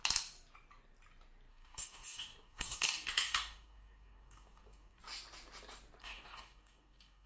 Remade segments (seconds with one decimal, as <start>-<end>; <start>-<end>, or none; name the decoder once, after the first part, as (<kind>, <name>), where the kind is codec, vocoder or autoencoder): 1.5-5.0 (codec, DAC); 6.0-7.3